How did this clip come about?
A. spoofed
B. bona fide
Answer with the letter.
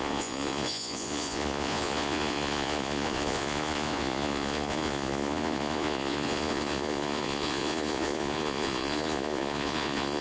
A